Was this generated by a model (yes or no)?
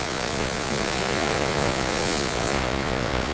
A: yes